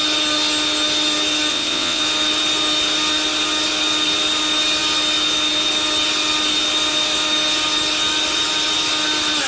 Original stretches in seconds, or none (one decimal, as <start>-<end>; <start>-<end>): 0.0-1.5; 2.0-9.5